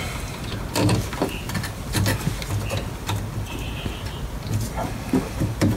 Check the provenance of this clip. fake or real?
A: real